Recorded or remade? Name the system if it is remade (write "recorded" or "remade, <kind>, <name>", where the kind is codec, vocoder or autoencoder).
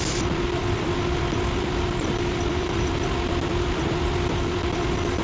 remade, vocoder, BigVGAN v2